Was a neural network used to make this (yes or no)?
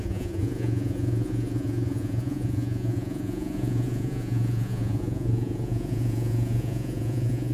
yes